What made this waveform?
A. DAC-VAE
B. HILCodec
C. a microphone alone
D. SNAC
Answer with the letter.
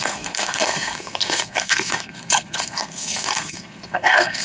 D